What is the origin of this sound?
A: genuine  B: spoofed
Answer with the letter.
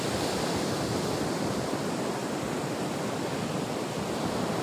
B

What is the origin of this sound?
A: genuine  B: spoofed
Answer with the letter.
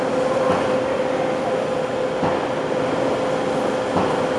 A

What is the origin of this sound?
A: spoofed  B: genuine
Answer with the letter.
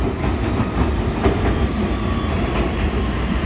B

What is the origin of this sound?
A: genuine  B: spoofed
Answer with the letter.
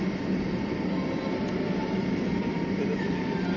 B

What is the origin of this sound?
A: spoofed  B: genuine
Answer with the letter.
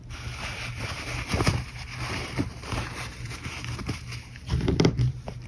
A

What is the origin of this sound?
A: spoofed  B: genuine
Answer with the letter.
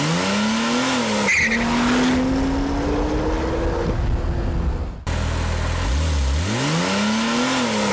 B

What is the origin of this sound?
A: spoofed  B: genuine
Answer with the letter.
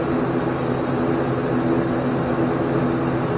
B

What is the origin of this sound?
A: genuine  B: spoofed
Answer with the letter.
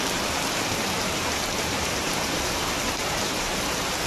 B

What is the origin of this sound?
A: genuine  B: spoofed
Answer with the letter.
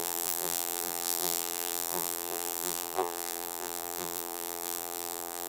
B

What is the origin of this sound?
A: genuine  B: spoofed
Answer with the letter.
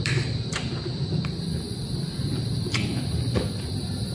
A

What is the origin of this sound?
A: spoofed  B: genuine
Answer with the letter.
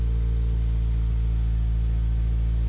B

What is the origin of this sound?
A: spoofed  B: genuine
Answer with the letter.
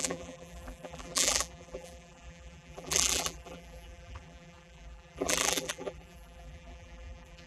A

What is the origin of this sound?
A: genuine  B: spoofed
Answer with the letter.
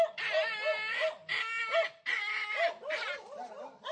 A